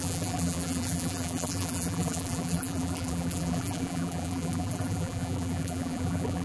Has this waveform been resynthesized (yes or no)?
yes